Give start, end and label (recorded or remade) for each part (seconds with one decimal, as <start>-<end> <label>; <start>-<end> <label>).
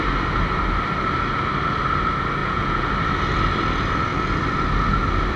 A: 0.0-2.4 recorded; 2.4-2.9 remade; 2.9-5.4 recorded